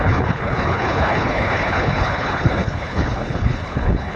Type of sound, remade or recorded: remade